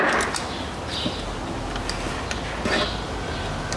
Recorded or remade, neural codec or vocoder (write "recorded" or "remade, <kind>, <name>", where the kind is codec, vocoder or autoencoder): recorded